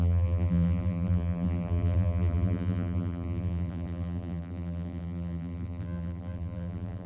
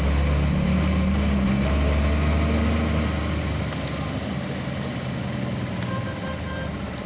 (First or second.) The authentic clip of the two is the second